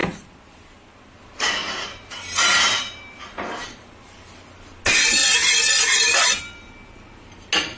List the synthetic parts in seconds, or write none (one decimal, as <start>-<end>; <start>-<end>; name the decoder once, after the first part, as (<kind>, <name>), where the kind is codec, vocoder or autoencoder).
1.6-4.4 (vocoder, BigVGAN v2)